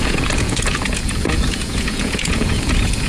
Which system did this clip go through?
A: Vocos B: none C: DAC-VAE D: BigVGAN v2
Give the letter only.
A